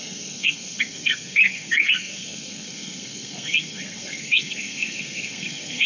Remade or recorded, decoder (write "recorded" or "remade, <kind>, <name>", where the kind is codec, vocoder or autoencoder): remade, codec, SNAC